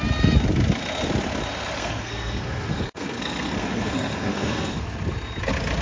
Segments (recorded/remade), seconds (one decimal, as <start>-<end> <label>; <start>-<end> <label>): 0.0-1.8 recorded; 1.8-4.8 remade; 4.8-5.8 recorded